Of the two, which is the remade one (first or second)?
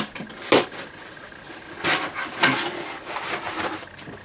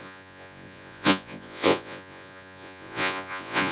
second